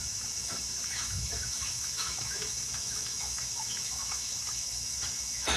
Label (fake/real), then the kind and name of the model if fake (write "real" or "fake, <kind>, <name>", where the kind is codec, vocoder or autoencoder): fake, autoencoder, DAC-VAE